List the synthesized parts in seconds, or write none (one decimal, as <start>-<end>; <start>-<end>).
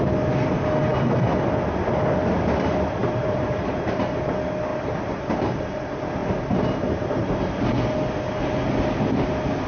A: 3.0-4.2; 4.7-5.6; 6.2-7.4